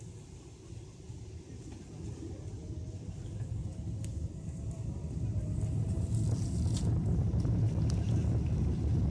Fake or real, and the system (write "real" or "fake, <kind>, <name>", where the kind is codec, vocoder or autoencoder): real